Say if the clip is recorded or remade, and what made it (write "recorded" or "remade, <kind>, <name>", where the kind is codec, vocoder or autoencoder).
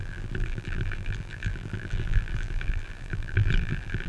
remade, vocoder, BigVGAN v2